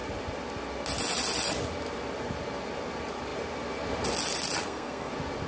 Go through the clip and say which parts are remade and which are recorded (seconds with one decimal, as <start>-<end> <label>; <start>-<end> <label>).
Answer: 0.0-4.6 recorded; 4.6-5.1 remade; 5.1-5.5 recorded